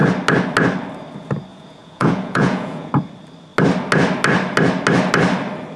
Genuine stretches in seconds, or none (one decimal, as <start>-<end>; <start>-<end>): 0.0-1.5; 2.9-5.8